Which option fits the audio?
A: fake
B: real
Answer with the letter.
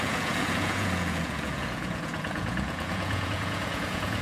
A